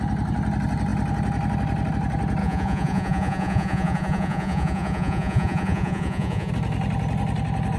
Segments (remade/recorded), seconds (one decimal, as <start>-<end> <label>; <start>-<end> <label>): 0.0-2.4 recorded; 2.4-6.5 remade; 6.5-7.8 recorded